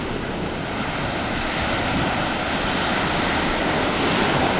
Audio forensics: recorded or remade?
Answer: recorded